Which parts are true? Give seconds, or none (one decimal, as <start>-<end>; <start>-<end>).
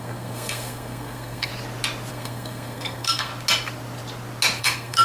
1.5-2.1; 3.3-4.6